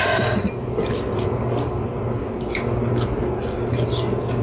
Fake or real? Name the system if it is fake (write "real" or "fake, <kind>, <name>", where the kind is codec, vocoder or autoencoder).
real